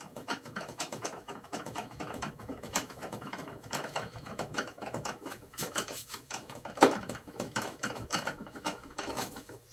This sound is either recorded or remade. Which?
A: remade